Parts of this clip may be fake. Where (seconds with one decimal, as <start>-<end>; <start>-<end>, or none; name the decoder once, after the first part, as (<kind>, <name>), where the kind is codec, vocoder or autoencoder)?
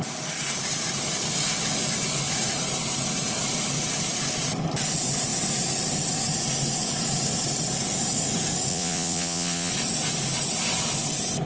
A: 8.7-9.7 (vocoder, Vocos)